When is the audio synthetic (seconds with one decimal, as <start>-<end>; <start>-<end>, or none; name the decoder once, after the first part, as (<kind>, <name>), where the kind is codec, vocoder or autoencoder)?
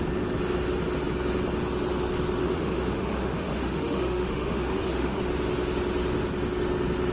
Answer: 2.4-5.2 (autoencoder, DAC-VAE)